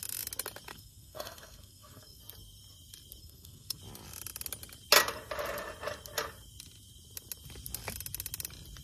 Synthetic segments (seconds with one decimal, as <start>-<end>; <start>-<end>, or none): 0.7-2.2; 3.2-3.8